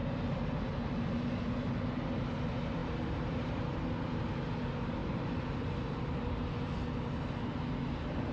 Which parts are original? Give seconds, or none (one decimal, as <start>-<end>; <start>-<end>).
0.0-2.8; 3.5-5.0; 6.7-8.3